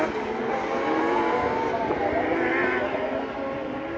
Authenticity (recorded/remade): recorded